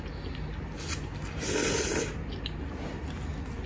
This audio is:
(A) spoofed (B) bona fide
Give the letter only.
B